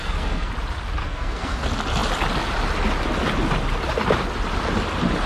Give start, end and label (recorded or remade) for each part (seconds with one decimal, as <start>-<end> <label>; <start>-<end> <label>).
0.0-0.5 remade; 0.5-1.0 recorded; 1.0-1.6 remade; 1.6-5.3 recorded

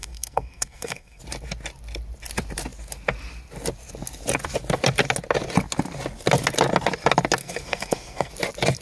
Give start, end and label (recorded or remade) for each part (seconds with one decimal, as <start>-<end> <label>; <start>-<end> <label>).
0.0-1.2 remade; 1.2-7.4 recorded; 7.4-8.3 remade; 8.3-8.8 recorded

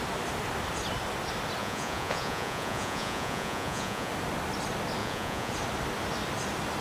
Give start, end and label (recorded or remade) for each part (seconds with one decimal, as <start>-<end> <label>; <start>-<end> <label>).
0.0-1.6 recorded; 1.6-4.1 remade; 4.1-5.0 recorded; 5.0-5.5 remade; 5.5-6.8 recorded

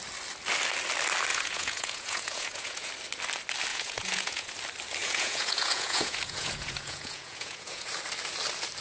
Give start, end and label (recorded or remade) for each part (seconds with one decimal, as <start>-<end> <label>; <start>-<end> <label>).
0.0-1.3 recorded; 1.3-2.9 remade; 2.9-3.7 recorded; 3.7-4.5 remade; 4.5-5.0 recorded; 5.0-7.9 remade; 7.9-8.8 recorded

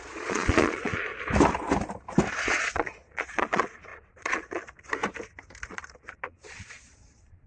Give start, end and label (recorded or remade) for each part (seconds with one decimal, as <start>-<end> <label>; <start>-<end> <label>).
0.0-1.1 remade; 1.1-2.4 recorded; 2.4-5.0 remade; 5.0-5.7 recorded; 5.7-7.5 remade

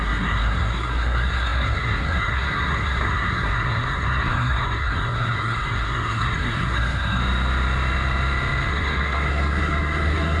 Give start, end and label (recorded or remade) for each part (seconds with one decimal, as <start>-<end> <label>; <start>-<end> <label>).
0.0-7.2 remade; 7.2-8.7 recorded; 8.7-10.4 remade

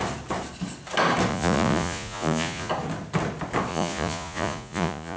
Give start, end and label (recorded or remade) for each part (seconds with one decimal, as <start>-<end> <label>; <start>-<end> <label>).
0.0-1.3 recorded; 1.3-2.7 remade; 2.7-3.7 recorded; 3.7-5.2 remade